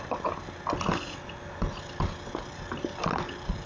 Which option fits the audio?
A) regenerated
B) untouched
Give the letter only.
B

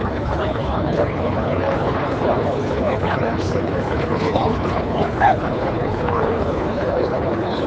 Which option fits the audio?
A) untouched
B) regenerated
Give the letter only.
B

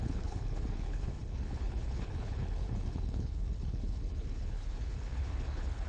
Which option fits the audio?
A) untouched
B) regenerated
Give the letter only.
B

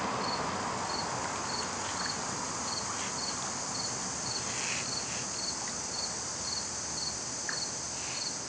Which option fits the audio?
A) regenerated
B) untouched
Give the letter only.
B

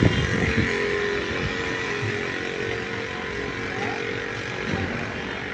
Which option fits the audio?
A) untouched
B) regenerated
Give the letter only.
A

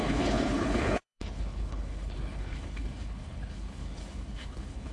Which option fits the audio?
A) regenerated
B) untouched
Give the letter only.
A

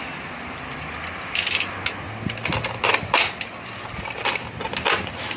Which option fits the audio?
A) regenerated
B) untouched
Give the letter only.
B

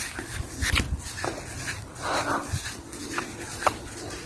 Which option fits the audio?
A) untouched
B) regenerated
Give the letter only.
A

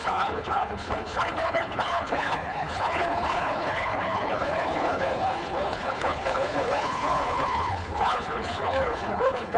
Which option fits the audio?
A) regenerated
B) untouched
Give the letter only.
A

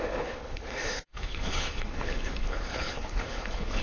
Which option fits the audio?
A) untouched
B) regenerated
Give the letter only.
B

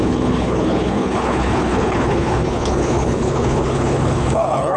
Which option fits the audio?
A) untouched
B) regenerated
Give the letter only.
B